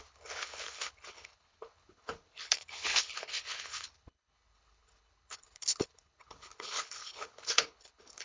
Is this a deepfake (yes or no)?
yes